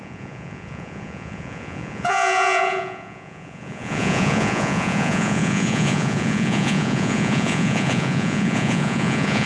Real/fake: fake